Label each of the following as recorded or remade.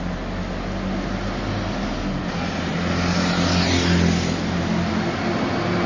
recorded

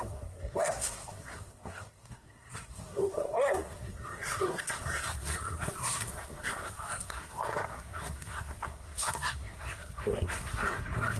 remade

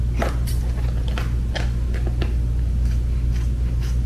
recorded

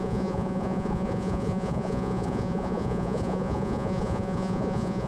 remade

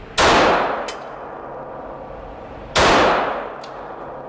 recorded